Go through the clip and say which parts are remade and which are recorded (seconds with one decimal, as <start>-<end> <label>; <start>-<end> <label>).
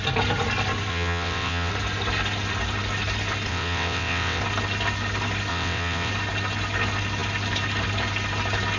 0.0-0.9 recorded; 0.9-1.7 remade; 1.7-3.5 recorded; 3.5-4.4 remade; 4.4-5.5 recorded; 5.5-6.1 remade; 6.1-8.8 recorded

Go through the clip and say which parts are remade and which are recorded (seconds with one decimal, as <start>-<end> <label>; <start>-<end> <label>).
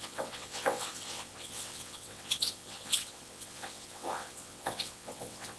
0.0-5.6 remade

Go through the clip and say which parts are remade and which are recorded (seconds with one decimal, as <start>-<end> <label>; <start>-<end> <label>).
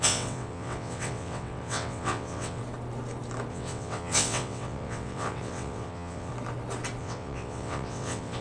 0.0-2.6 remade; 2.6-3.5 recorded; 3.5-6.3 remade; 6.3-7.0 recorded; 7.0-8.4 remade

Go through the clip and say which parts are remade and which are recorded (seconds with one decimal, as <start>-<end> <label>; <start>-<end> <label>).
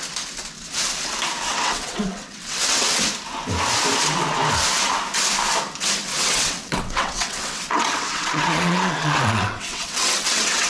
0.0-1.5 recorded; 1.5-3.0 remade; 3.0-6.1 recorded; 6.1-10.7 remade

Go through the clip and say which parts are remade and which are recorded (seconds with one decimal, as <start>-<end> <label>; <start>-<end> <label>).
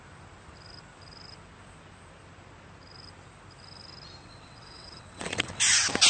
0.0-4.2 recorded; 4.2-5.5 remade; 5.5-6.1 recorded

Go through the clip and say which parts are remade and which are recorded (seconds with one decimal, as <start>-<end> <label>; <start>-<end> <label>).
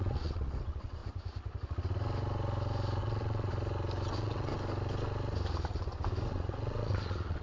0.0-1.0 remade; 1.0-3.0 recorded; 3.0-3.5 remade; 3.5-4.1 recorded; 4.1-4.5 remade; 4.5-6.3 recorded; 6.3-7.4 remade